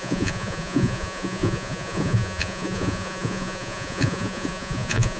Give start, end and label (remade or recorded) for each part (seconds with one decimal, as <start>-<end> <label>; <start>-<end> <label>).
0.0-5.2 remade